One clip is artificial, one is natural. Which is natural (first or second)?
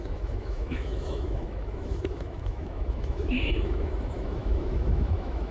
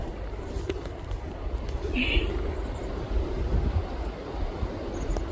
second